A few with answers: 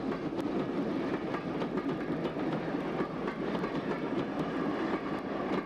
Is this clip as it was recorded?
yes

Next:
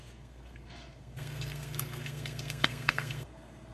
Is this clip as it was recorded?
no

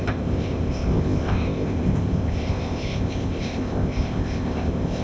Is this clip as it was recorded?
no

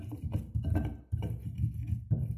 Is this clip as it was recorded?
yes